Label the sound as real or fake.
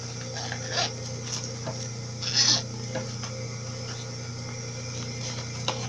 real